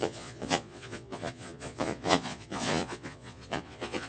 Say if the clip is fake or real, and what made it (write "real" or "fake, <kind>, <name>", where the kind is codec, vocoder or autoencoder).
fake, vocoder, Vocos